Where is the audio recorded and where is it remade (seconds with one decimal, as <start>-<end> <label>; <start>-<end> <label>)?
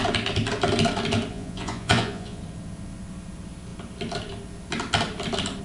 0.0-1.3 recorded; 1.3-2.4 remade; 2.4-5.6 recorded